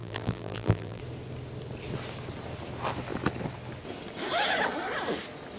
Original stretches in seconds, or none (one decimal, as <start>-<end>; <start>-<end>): 1.0-5.6